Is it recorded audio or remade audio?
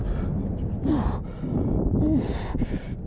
recorded